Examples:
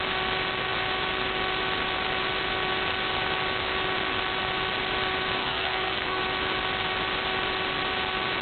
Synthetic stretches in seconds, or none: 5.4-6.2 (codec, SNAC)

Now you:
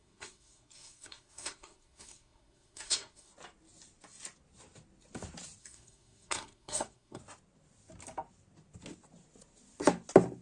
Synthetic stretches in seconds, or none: 0.0-3.3 (codec, SNAC); 5.6-7.2

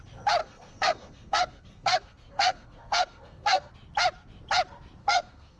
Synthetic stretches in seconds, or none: 0.4-3.7 (codec, SNAC); 5.0-5.6